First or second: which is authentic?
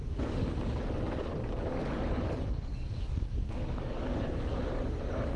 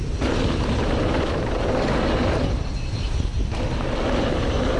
second